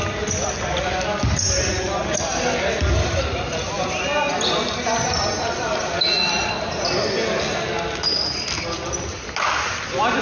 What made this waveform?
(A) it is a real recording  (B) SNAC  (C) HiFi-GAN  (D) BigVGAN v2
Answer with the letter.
A